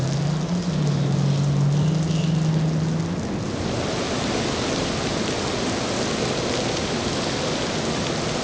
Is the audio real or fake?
real